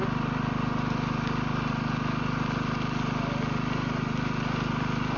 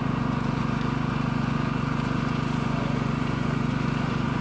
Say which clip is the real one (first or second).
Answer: first